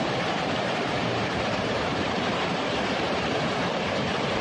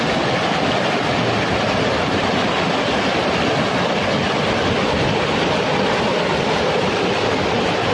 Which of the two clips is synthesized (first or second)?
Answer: first